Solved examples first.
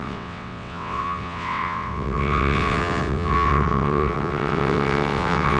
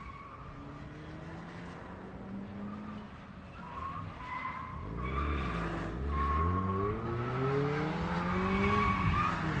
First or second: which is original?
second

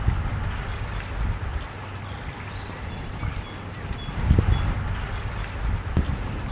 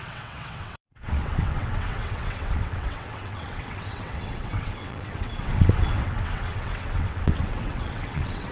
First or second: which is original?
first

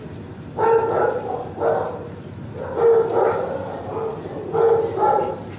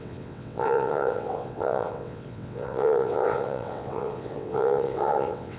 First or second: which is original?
first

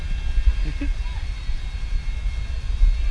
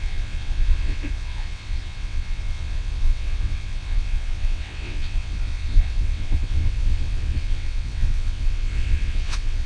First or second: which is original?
first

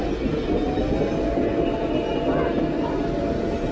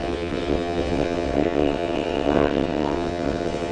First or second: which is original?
first